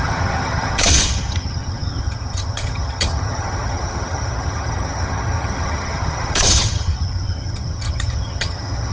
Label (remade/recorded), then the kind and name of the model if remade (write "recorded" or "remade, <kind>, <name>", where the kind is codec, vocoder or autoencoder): remade, vocoder, HiFi-GAN